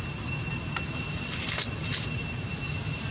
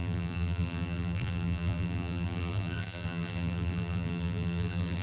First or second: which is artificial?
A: second